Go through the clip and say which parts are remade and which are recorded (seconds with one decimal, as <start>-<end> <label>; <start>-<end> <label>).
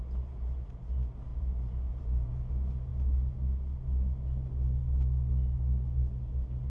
0.0-1.3 recorded; 1.3-2.5 remade; 2.5-6.7 recorded